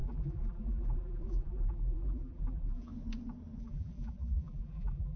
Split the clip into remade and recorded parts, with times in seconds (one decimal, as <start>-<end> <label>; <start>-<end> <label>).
0.0-2.9 remade; 2.9-3.6 recorded; 3.6-5.2 remade